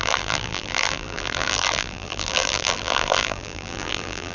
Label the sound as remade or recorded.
remade